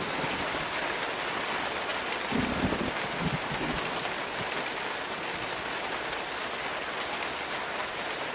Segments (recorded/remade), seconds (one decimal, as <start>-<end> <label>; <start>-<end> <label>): 0.0-8.3 recorded